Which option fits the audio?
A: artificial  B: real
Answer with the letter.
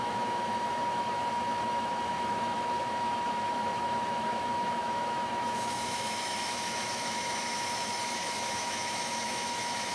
A